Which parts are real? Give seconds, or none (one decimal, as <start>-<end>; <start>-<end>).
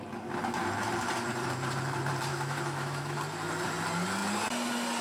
0.0-2.3; 3.2-5.0